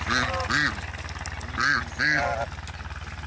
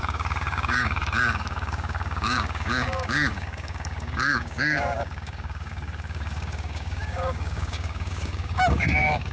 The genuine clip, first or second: first